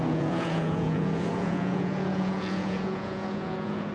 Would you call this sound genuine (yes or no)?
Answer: no